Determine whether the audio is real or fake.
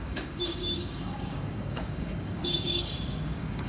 fake